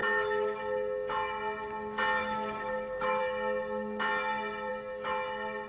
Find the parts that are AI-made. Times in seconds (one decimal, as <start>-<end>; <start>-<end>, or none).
0.0-0.6; 2.2-3.2